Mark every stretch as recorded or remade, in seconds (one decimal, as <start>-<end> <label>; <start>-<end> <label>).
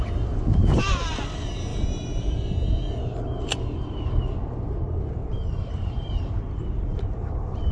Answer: 0.0-1.7 recorded; 1.7-2.4 remade; 2.4-5.2 recorded; 5.2-6.1 remade; 6.1-7.7 recorded